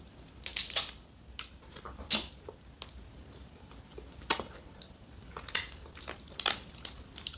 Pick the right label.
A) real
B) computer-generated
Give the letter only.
B